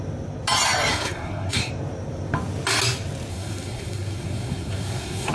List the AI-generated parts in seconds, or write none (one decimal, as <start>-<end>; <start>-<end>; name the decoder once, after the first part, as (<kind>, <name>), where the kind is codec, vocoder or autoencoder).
0.9-1.7 (codec, SNAC); 3.3-5.3